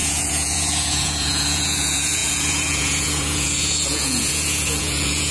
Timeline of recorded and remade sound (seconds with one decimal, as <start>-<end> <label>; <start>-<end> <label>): 0.0-5.3 remade